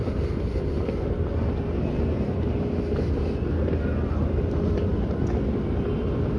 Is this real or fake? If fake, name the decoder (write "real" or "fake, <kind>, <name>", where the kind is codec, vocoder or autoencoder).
real